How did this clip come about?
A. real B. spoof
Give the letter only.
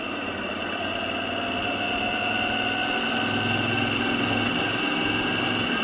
A